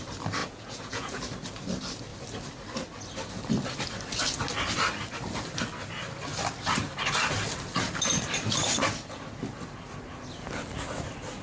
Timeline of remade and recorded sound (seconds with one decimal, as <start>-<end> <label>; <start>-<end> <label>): 0.0-0.4 recorded; 0.4-1.2 remade; 1.2-11.4 recorded